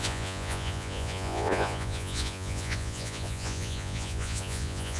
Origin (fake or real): fake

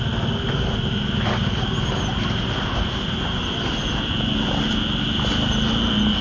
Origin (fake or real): real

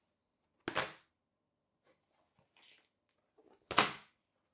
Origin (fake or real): real